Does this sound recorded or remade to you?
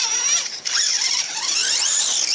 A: remade